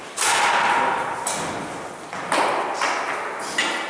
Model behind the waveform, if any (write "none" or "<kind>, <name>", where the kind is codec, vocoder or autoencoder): none